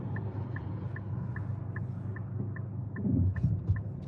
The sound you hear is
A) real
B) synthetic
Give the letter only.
A